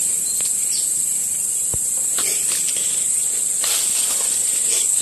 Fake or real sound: real